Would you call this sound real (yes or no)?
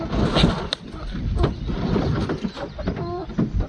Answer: yes